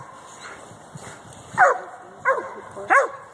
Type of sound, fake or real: real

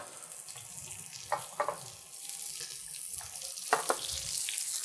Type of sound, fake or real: real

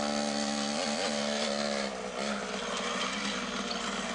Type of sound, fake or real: real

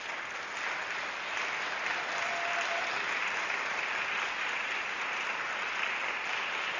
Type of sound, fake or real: real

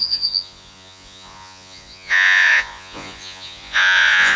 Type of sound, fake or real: fake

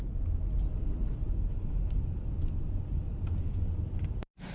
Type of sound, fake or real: real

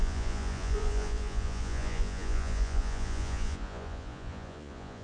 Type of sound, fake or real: fake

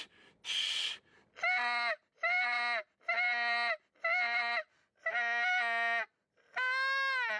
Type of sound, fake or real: real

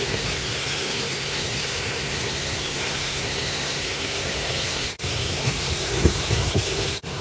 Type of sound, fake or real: fake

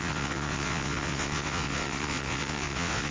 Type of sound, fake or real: fake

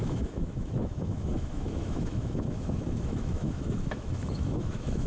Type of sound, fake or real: fake